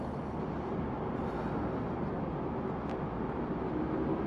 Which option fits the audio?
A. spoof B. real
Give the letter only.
B